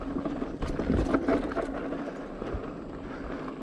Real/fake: real